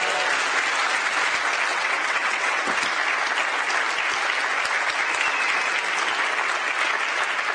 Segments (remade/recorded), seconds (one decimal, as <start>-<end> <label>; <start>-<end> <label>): 0.0-1.7 recorded; 1.7-2.6 remade; 2.6-7.5 recorded

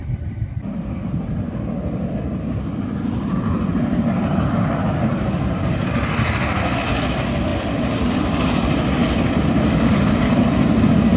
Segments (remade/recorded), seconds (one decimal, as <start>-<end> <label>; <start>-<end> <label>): 0.0-11.2 recorded

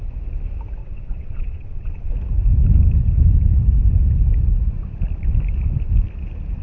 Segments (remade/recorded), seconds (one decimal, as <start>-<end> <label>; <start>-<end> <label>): 0.0-0.8 recorded; 0.8-2.1 remade; 2.1-6.6 recorded

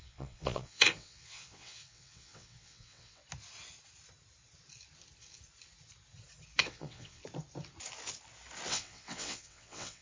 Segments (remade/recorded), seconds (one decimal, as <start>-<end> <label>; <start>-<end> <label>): 0.0-3.2 remade; 3.2-6.6 recorded; 6.6-7.2 remade; 7.2-8.7 recorded; 8.7-10.0 remade